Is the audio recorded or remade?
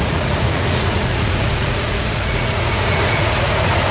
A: remade